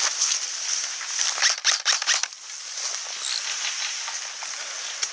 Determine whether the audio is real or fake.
real